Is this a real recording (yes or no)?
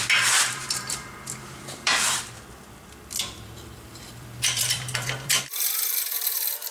no